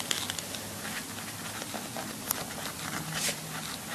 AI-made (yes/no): no